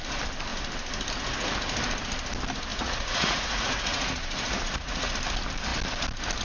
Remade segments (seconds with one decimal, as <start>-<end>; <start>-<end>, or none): 2.7-5.1